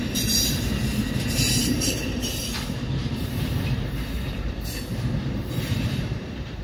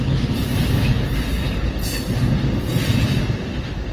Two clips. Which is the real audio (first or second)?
second